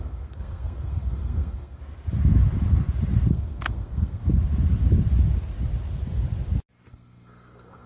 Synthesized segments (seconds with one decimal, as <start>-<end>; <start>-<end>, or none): 0.0-1.8; 3.3-4.2; 6.9-7.9